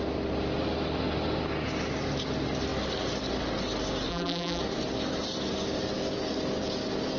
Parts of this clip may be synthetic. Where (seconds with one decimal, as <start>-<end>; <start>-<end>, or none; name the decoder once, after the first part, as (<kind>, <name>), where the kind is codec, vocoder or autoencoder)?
4.1-4.6 (vocoder, BigVGAN v2)